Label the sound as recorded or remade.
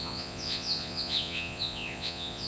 remade